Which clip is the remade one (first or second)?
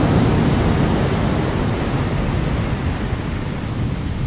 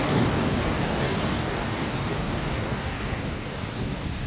second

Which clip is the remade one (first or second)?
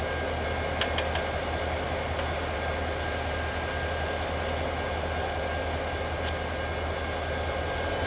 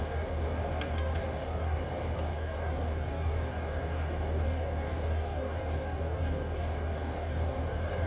second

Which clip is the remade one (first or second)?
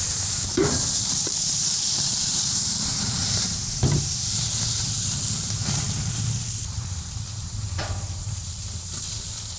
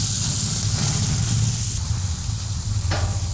first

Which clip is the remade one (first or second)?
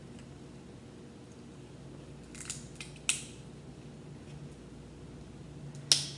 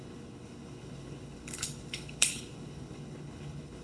second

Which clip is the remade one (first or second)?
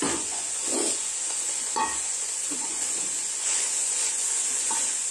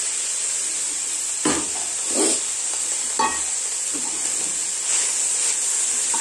first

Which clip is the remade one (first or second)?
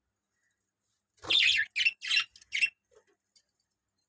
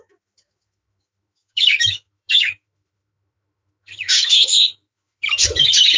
second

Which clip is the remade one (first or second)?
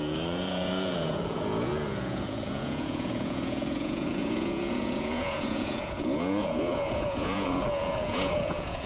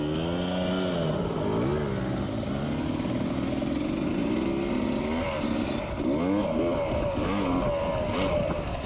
first